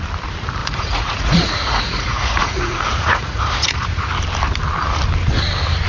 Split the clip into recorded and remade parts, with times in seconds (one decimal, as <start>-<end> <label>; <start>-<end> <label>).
0.0-0.6 recorded; 0.6-4.1 remade; 4.1-5.9 recorded